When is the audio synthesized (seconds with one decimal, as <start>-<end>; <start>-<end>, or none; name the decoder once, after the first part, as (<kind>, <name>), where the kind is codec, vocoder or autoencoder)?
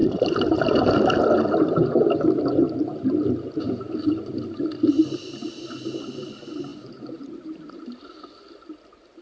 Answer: 0.0-0.6 (vocoder, BigVGAN v2); 6.7-7.7